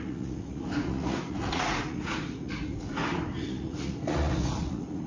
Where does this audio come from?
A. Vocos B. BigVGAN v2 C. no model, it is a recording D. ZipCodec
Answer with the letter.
A